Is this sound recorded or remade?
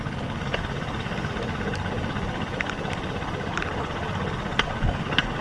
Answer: recorded